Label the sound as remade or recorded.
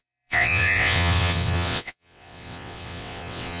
remade